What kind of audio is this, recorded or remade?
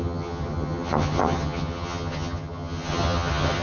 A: remade